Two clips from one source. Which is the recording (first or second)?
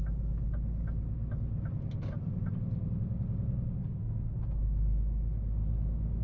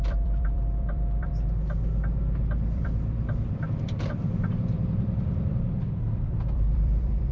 first